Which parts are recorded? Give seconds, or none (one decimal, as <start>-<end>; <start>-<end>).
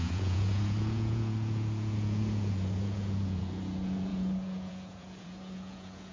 none